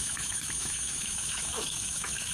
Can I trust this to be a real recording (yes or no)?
no